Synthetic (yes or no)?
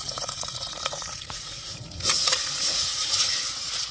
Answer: yes